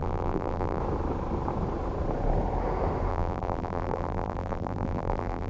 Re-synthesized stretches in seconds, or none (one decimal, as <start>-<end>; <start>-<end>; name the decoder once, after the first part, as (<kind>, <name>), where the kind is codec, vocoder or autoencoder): 0.0-0.8 (vocoder, BigVGAN v2); 3.1-5.5

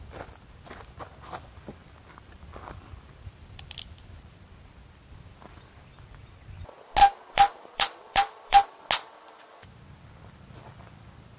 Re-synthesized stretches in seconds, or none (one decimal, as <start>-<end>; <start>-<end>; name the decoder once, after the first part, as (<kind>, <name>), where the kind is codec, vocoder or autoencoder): 7.0-8.9 (vocoder, BigVGAN v2)

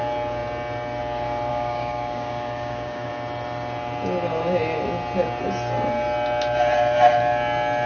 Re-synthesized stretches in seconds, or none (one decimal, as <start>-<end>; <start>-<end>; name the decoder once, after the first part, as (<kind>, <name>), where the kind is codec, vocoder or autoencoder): 1.5-3.1 (codec, DAC)

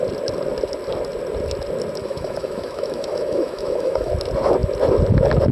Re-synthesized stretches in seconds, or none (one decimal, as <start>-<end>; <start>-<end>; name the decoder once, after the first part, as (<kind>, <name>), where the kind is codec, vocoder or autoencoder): 2.0-4.1 (autoencoder, DAC-VAE)

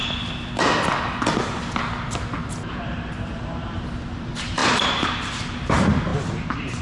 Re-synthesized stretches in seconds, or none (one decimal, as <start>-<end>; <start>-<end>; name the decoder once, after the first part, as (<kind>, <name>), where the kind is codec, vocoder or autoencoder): 2.5-6.8 (vocoder, BigVGAN v2)

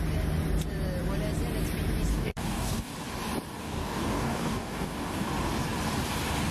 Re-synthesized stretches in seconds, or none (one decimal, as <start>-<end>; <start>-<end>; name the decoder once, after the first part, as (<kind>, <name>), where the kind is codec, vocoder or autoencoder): 2.1-2.9 (codec, DAC); 3.6-5.3

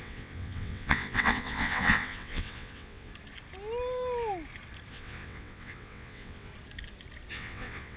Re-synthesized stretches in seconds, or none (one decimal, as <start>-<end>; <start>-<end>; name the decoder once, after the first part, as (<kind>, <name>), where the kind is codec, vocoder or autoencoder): 0.0-3.1 (vocoder, WaveNeXt); 4.9-6.5; 7.3-8.0